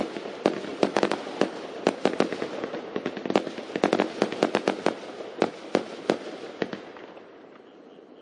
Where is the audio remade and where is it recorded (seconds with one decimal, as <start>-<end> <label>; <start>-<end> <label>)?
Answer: 0.0-0.7 recorded; 0.7-5.6 remade; 5.6-8.2 recorded